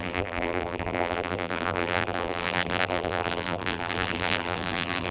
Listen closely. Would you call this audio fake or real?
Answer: fake